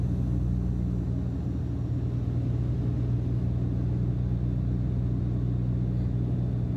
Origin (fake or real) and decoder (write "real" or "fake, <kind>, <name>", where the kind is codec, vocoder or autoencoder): real